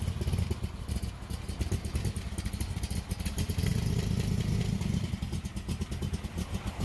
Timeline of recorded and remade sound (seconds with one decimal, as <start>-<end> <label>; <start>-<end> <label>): 0.0-6.8 recorded